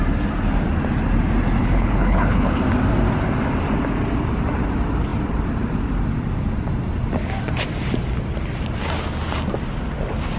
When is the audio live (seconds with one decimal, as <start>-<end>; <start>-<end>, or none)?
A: 0.0-1.6; 2.6-10.4